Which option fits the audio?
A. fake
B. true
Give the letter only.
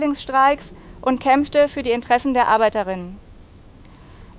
A